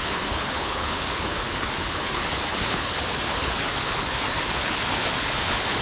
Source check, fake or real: fake